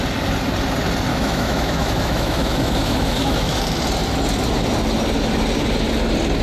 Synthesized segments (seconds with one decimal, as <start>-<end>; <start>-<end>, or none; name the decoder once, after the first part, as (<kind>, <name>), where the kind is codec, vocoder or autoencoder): 1.1-3.6 (autoencoder, DAC-VAE)